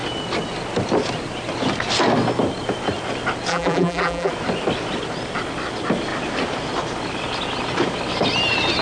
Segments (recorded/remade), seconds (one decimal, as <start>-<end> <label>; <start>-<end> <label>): 0.0-3.5 recorded; 3.5-4.3 remade; 4.3-8.8 recorded